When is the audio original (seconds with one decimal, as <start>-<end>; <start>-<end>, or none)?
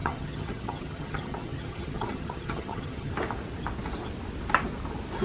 3.1-5.2